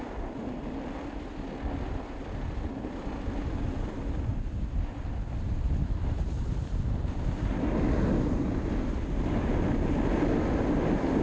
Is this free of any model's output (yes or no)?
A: yes